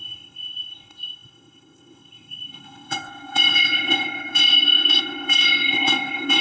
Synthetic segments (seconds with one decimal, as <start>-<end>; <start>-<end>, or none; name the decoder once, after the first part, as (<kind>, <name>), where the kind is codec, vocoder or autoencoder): 0.0-6.4 (codec, ZipCodec)